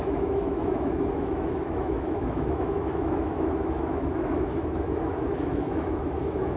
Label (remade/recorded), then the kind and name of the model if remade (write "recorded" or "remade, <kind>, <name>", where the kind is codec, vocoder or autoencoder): remade, autoencoder, DAC-VAE